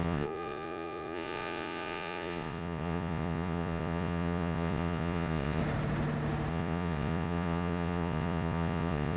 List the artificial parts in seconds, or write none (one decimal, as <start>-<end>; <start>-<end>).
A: 0.0-5.6; 6.5-9.2